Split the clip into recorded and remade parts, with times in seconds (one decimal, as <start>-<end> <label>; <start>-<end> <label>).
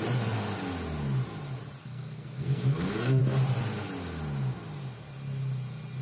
0.0-1.8 recorded; 1.8-3.2 remade; 3.2-6.0 recorded